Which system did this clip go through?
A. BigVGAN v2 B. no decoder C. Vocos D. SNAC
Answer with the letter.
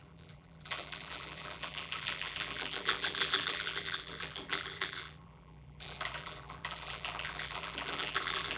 A